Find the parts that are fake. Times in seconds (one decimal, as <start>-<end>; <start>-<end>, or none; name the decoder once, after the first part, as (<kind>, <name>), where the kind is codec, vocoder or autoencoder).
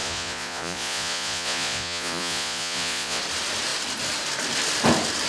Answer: 0.0-3.2 (vocoder, Vocos)